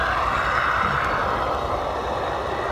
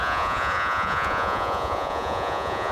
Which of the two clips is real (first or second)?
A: first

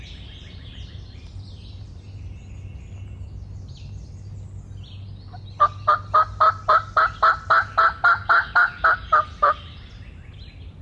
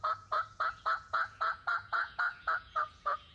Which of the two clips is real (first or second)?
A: first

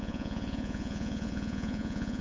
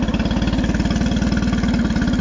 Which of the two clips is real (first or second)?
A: second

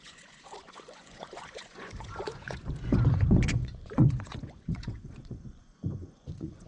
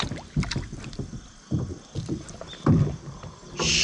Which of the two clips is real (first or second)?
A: second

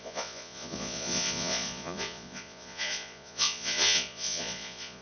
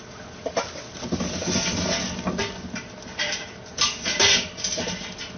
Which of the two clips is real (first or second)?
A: second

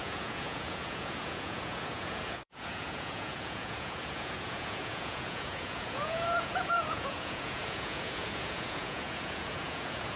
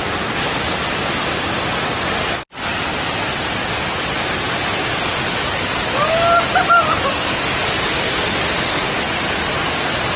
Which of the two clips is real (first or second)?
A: second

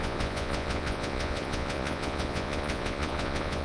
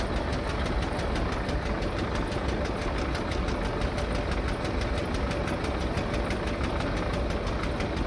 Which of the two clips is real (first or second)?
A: second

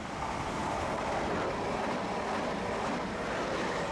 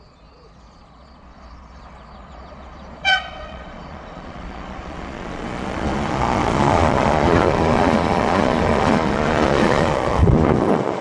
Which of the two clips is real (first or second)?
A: first